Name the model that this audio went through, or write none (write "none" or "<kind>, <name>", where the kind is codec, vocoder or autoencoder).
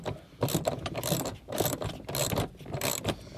none